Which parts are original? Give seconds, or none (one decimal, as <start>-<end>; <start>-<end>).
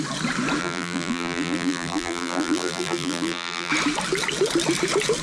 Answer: 0.0-0.6; 3.7-5.2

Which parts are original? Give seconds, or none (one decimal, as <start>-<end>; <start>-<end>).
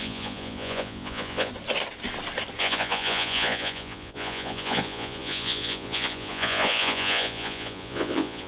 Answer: 1.5-2.6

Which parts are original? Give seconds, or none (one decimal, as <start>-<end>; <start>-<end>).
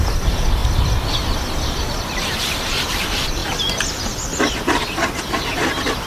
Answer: 0.6-1.8; 3.4-6.1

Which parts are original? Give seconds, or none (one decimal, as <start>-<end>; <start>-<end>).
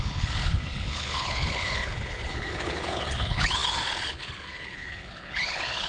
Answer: none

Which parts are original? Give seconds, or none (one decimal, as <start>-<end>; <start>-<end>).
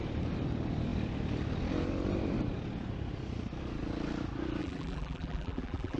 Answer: 0.0-4.6